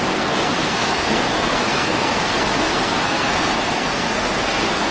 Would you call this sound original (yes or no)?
no